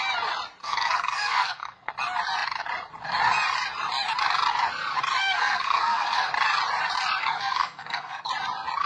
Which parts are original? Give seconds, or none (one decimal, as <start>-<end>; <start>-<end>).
0.0-0.6; 1.9-5.2; 6.3-7.2; 8.3-8.9